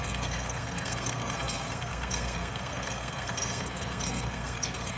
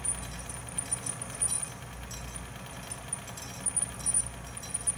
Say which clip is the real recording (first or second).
second